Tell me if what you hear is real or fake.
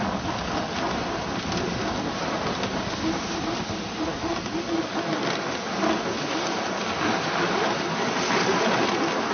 real